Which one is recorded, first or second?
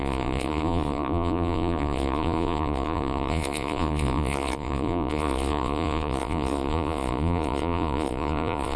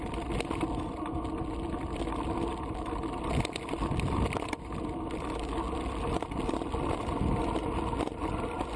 second